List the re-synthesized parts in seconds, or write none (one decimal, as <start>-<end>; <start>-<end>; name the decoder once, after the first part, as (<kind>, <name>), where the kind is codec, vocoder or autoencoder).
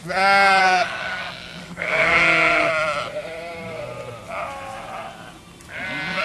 0.6-1.2 (codec, SNAC); 1.6-2.7